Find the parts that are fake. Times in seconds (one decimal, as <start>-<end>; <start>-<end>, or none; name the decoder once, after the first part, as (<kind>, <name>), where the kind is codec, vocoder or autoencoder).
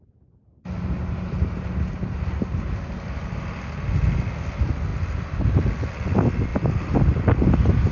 none